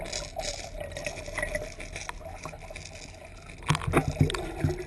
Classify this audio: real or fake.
real